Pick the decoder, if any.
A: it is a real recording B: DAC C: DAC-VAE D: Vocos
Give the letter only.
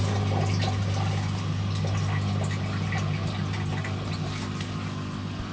A